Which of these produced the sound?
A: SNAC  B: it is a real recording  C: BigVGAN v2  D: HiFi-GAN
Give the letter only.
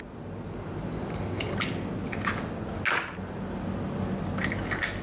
B